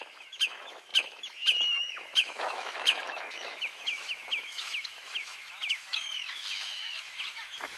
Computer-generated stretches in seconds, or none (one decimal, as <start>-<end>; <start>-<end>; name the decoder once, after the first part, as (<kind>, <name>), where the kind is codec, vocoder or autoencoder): 0.0-7.8 (autoencoder, DAC-VAE)